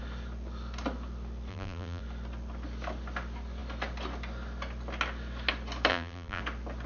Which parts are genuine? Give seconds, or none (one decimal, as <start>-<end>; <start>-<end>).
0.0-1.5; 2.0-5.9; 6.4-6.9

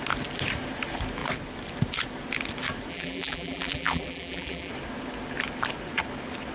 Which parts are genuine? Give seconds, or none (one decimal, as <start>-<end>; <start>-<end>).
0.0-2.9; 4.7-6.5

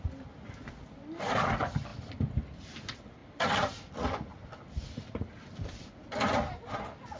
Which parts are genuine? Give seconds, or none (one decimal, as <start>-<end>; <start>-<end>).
0.0-1.9; 2.7-3.2; 3.9-7.2

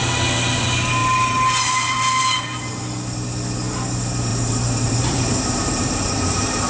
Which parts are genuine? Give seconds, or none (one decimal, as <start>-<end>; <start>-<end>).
0.0-4.3